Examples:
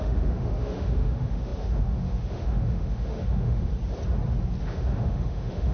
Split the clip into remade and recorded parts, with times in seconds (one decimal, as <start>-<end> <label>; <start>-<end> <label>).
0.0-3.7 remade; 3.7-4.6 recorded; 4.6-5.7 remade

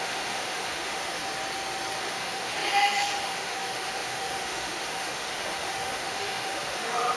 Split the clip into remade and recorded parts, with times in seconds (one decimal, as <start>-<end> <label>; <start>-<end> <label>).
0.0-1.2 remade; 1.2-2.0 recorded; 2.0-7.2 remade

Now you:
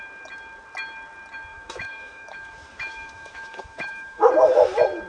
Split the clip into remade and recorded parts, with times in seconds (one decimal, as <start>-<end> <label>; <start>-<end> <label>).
0.0-1.5 recorded; 1.5-4.3 remade; 4.3-5.1 recorded